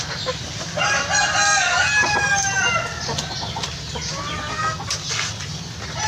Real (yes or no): yes